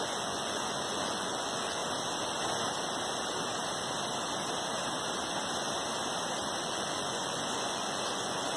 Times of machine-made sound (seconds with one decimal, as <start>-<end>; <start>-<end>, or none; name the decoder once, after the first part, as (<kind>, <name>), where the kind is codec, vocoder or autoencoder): 0.0-1.8 (vocoder, Vocos); 6.6-8.6